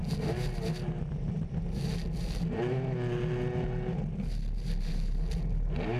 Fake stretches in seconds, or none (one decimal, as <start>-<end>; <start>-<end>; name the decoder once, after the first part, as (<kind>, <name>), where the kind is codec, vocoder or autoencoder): none